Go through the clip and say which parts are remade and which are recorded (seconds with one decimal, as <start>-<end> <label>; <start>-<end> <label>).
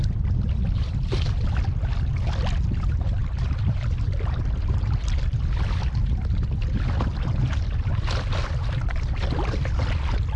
0.0-10.4 recorded